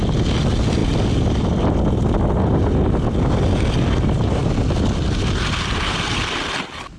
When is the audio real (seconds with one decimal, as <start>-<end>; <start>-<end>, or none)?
0.0-7.0